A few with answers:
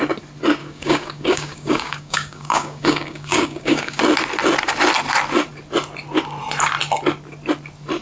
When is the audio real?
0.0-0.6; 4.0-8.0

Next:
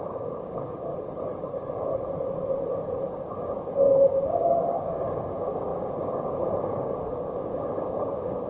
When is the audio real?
0.9-3.1

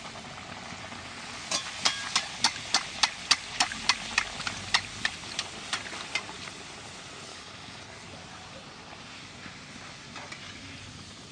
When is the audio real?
0.0-7.3; 7.8-11.3